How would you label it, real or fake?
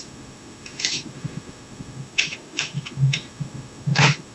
fake